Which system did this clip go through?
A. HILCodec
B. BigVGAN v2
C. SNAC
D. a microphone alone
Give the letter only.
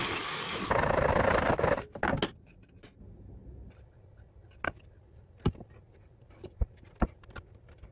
D